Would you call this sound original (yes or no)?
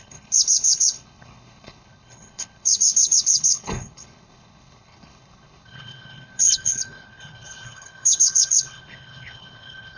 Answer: no